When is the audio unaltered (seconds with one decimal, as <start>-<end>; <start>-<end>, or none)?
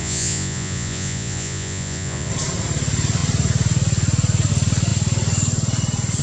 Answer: 2.3-6.2